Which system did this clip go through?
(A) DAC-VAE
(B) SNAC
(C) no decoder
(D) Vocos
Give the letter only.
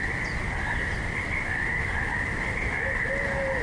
C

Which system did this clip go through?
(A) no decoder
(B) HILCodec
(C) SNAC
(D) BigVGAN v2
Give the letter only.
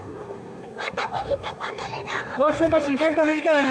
C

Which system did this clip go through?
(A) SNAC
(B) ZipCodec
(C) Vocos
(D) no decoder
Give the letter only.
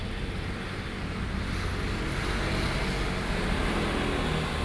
D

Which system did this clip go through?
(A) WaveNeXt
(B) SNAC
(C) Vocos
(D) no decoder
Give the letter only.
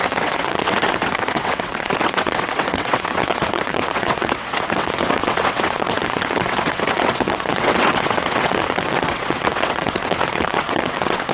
A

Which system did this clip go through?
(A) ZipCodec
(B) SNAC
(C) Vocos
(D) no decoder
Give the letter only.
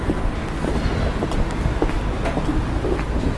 D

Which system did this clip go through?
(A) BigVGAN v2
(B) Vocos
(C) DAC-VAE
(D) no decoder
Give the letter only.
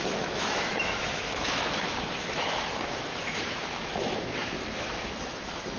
C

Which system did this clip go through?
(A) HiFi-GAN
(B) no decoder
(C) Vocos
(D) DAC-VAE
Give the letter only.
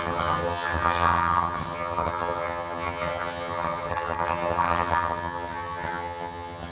A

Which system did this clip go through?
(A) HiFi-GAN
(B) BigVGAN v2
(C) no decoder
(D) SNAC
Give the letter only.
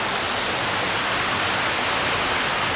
C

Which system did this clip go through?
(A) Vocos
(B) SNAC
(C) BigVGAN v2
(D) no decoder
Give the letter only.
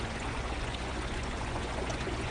A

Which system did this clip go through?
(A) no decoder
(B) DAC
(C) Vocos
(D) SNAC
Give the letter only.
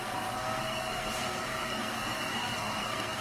D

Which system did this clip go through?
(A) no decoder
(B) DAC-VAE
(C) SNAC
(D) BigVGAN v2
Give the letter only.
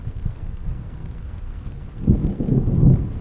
C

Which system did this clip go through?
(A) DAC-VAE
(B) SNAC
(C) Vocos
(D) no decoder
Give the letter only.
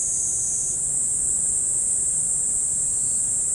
D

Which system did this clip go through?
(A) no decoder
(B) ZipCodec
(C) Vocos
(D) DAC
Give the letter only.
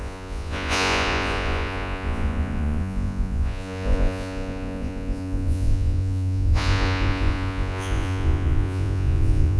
C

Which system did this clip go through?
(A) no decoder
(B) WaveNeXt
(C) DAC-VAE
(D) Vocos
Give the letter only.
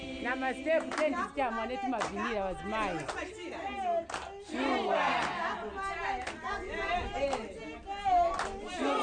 A